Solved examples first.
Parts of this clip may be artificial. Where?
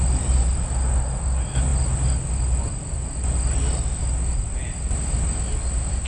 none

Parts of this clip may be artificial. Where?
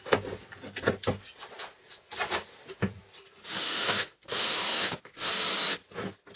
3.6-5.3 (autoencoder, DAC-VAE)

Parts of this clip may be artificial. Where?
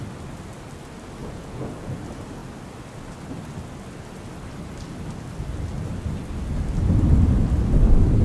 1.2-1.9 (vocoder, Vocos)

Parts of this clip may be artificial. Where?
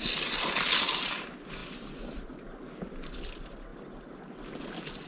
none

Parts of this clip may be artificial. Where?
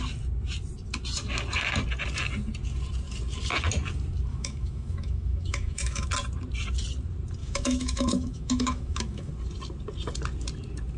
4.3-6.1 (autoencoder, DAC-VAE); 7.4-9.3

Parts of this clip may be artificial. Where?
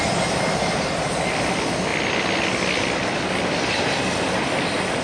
none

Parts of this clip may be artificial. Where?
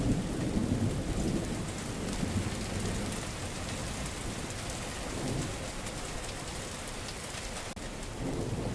none